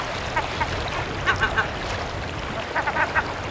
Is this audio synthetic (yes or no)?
no